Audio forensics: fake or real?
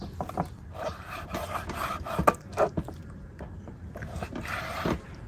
real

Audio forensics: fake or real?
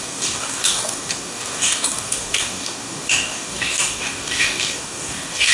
fake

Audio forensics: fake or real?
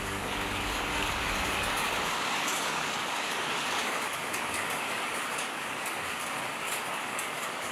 fake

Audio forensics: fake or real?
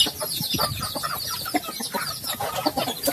real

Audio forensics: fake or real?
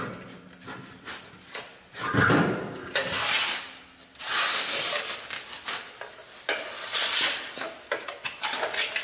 real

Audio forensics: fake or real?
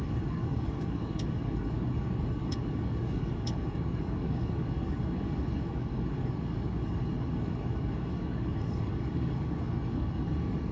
fake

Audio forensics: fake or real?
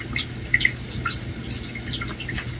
real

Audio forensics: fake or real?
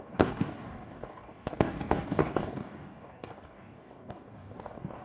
fake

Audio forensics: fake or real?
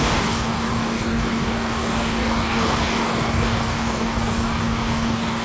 fake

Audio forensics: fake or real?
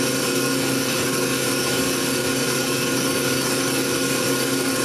fake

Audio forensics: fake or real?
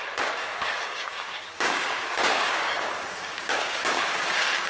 fake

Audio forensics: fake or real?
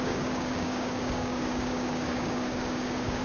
fake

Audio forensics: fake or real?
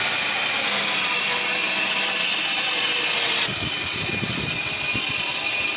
real